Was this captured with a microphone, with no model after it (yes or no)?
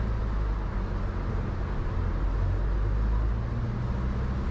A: yes